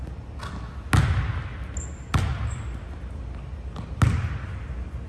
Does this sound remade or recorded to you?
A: recorded